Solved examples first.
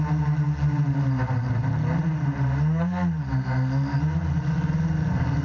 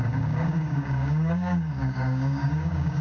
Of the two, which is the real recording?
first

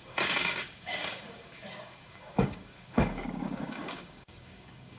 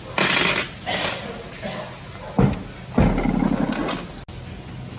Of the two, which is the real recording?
second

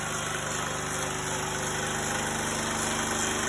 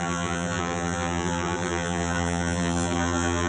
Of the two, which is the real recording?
first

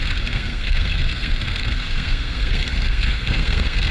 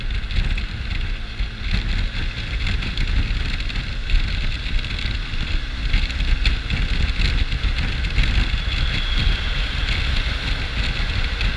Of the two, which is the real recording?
second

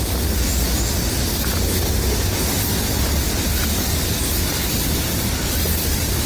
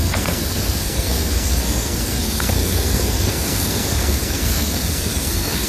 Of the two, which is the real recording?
first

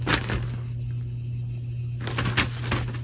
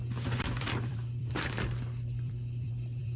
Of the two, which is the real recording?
first